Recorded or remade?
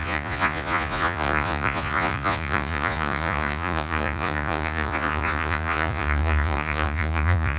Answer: remade